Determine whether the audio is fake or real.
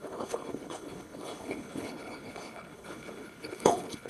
fake